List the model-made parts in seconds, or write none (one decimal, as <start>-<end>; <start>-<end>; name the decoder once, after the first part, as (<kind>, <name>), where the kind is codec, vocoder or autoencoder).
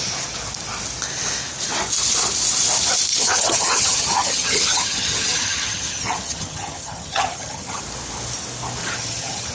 3.1-7.8 (vocoder, HiFi-GAN); 8.8-9.5